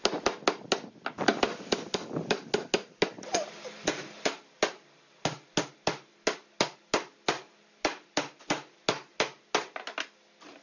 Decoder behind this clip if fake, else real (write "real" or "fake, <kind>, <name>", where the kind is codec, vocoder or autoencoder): real